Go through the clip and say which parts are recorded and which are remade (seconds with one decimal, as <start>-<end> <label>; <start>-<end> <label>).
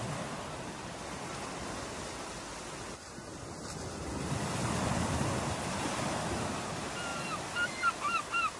0.0-8.6 recorded